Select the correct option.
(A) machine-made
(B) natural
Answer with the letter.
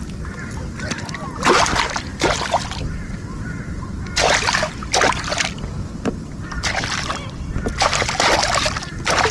B